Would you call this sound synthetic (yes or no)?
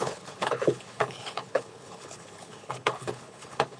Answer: yes